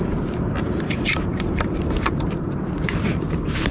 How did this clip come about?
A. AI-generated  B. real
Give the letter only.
A